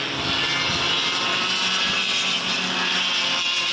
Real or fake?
real